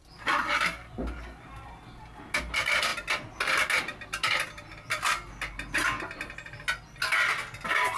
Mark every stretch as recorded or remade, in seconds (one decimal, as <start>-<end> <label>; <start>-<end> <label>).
0.0-8.0 recorded